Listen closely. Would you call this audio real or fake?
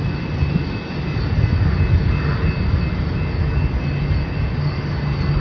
real